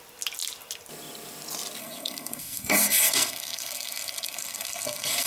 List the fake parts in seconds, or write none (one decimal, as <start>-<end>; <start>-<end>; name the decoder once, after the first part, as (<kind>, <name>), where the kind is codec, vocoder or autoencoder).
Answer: 1.8-5.3 (codec, SNAC)